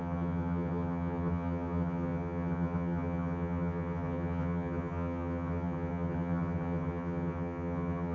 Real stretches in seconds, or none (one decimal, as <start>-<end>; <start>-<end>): none